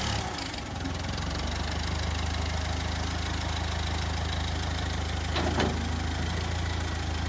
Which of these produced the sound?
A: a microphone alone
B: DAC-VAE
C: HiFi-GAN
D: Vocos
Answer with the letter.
A